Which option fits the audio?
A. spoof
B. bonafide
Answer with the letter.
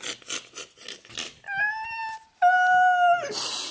B